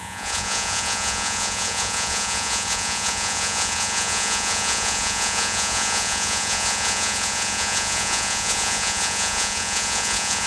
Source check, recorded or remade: remade